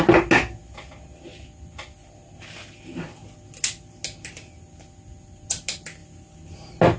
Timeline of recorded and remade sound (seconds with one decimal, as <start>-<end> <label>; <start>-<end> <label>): 0.0-7.0 recorded